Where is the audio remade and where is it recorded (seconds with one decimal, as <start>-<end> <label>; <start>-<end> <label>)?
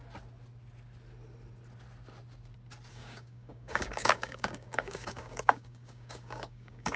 0.0-2.9 recorded; 2.9-7.0 remade